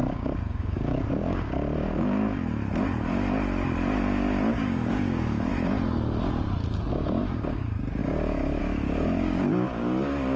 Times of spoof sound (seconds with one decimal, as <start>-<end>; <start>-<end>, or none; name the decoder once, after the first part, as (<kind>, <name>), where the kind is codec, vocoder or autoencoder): 0.0-2.3 (codec, DAC); 4.5-5.5; 6.9-10.4